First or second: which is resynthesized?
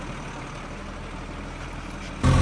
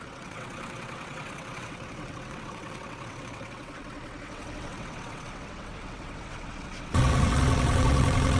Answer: second